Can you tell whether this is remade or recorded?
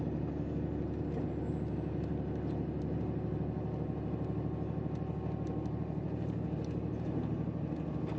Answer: recorded